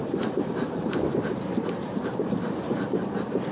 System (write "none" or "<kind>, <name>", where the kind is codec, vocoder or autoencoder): vocoder, BigVGAN v2